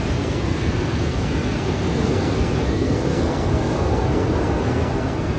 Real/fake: fake